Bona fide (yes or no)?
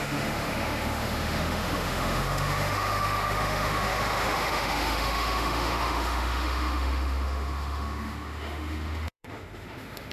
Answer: no